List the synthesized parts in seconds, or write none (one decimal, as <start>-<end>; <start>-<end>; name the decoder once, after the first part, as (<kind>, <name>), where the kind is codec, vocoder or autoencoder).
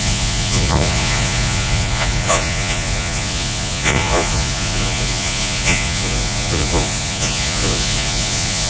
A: 0.0-8.7 (vocoder, Vocos)